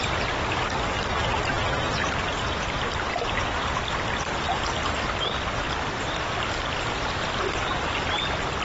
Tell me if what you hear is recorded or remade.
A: recorded